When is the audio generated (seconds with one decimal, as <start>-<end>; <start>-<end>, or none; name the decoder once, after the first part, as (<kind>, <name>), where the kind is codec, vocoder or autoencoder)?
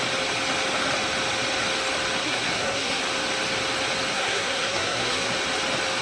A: 2.2-3.0 (codec, SNAC); 4.1-5.3